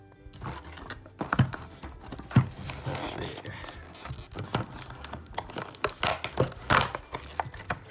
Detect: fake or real real